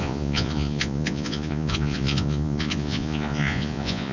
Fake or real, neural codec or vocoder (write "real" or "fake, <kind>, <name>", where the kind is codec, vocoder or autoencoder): fake, vocoder, Vocos